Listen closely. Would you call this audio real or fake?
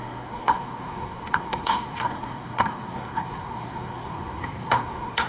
fake